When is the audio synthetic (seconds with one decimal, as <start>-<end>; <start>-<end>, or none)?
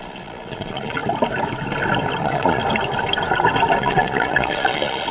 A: 0.0-1.0; 2.2-2.6; 3.8-5.1